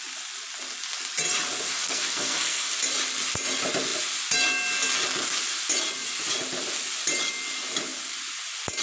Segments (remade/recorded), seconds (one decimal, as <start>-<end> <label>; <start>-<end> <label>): 0.0-1.7 recorded; 1.7-2.7 remade; 2.7-8.8 recorded